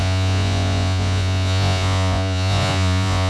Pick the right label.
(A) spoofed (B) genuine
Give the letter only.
A